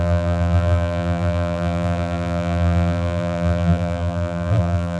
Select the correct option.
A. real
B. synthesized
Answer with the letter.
B